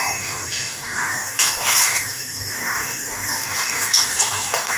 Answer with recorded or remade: remade